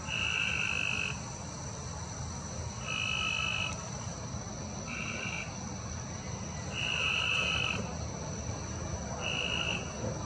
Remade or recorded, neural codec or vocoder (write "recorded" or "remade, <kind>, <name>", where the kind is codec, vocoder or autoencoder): recorded